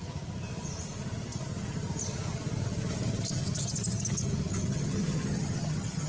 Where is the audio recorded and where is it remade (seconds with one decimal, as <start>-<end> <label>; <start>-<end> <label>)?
0.0-4.7 recorded; 4.7-6.1 remade